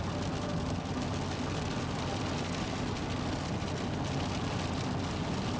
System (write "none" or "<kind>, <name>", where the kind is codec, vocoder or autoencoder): none